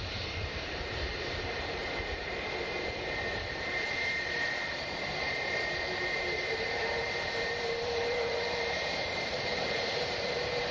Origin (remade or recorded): remade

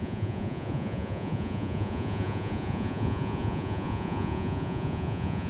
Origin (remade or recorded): remade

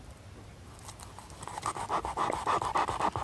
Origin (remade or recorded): recorded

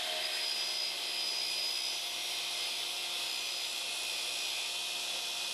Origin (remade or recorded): recorded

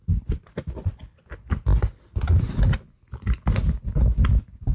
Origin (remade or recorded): recorded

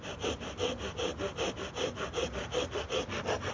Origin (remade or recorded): recorded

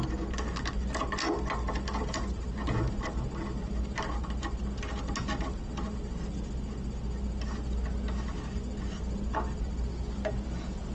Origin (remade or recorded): recorded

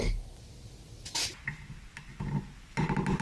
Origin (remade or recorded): recorded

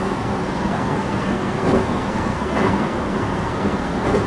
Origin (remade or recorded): remade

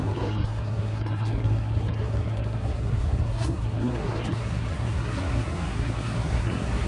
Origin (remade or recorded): remade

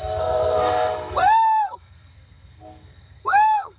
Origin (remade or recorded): remade